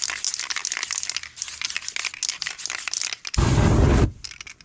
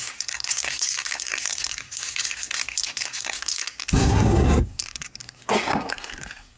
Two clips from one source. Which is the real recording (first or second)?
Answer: first